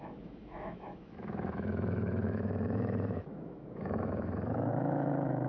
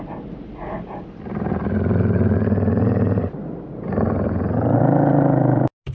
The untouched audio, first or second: second